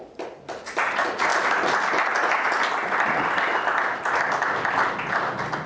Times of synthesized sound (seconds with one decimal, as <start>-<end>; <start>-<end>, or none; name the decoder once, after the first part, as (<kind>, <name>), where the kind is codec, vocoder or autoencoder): none